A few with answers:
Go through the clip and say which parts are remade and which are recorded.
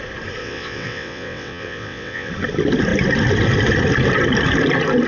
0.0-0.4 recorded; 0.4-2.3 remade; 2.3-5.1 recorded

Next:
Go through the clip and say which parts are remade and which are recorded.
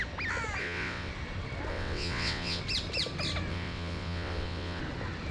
0.0-0.6 recorded; 0.6-1.1 remade; 1.1-1.7 recorded; 1.7-2.6 remade; 2.6-3.5 recorded; 3.5-4.8 remade; 4.8-5.3 recorded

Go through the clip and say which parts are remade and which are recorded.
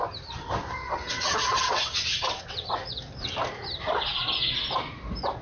0.0-0.8 recorded; 0.8-2.7 remade; 2.7-5.4 recorded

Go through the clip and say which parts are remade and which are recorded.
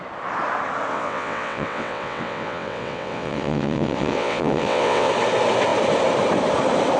0.0-0.9 recorded; 0.9-5.1 remade; 5.1-7.0 recorded